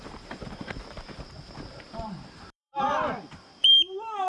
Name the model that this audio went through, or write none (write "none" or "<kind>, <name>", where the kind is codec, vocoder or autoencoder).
vocoder, BigVGAN v2